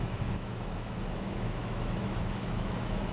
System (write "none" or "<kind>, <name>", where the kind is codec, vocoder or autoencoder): autoencoder, DAC-VAE